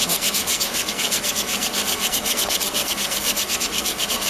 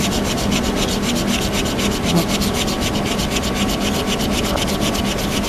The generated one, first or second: first